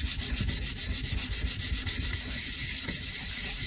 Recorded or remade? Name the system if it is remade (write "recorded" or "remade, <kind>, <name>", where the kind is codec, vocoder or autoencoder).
recorded